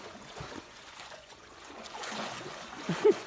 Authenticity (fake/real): fake